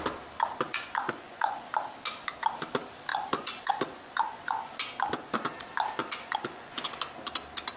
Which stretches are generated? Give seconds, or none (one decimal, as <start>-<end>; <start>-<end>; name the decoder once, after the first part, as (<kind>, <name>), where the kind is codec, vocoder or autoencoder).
0.7-1.7 (vocoder, Vocos); 3.1-4.7; 6.0-6.9